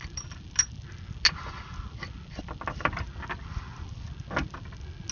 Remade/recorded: recorded